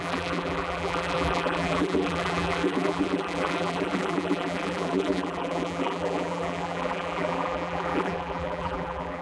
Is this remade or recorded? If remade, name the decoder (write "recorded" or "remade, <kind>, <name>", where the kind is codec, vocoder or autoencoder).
remade, vocoder, BigVGAN v2